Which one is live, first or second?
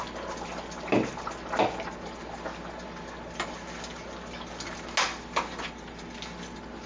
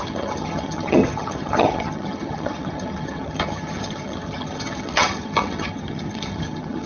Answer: first